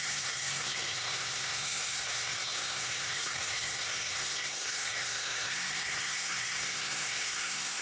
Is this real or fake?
fake